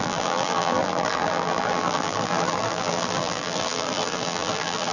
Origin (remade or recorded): remade